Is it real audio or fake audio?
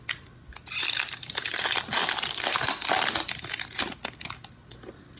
real